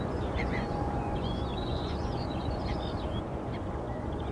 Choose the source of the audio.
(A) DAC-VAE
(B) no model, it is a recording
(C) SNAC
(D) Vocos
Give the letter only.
D